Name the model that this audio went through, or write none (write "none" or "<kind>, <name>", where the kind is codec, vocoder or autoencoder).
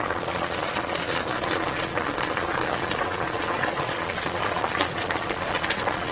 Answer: vocoder, Vocos